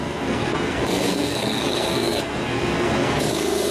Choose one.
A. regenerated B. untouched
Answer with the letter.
A